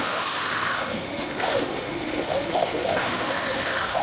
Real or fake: fake